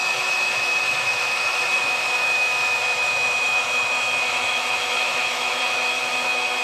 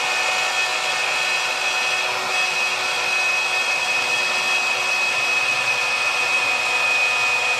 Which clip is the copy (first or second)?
first